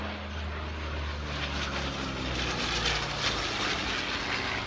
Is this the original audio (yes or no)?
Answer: yes